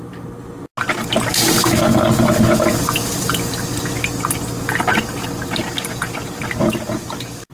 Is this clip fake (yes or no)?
no